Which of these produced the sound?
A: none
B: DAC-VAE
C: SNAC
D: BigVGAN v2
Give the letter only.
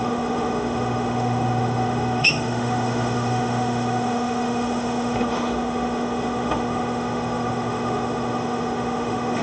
B